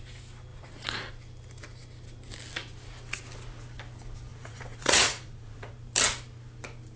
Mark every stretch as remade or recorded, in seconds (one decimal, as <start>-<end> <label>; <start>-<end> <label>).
0.0-0.5 recorded; 0.5-1.1 remade; 1.1-4.3 recorded; 4.3-5.7 remade; 5.7-7.0 recorded